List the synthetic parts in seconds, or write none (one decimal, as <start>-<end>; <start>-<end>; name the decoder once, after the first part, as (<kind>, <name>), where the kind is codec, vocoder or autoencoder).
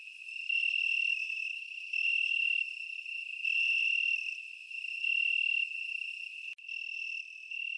1.1-2.4 (autoencoder, DAC-VAE)